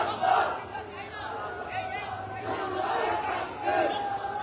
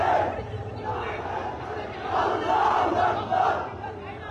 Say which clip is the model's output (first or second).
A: second